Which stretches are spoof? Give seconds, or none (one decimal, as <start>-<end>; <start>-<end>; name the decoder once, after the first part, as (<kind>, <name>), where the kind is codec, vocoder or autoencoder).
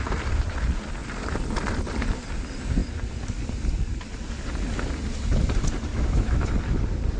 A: 5.9-6.5 (autoencoder, DAC-VAE)